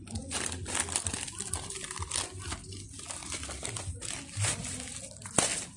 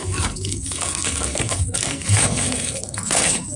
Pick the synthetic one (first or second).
second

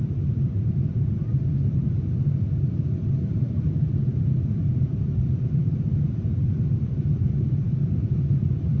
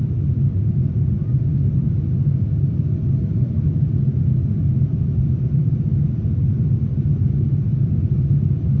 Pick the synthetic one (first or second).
first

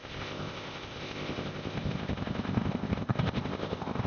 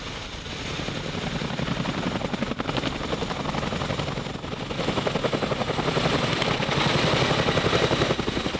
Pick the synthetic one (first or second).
first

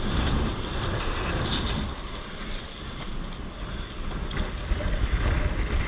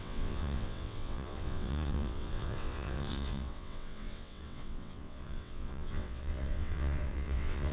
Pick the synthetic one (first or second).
second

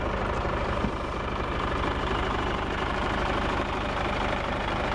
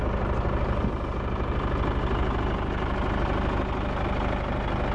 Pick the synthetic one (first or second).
first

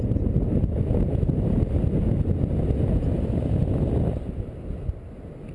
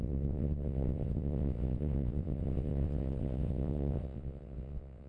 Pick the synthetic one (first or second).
second